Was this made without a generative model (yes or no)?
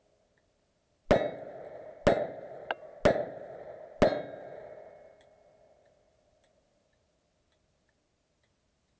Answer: yes